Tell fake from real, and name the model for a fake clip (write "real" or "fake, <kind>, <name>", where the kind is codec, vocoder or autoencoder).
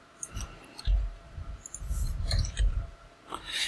fake, vocoder, BigVGAN v2